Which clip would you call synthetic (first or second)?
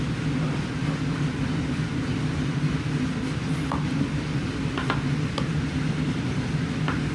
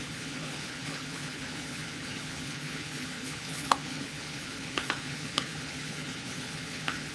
second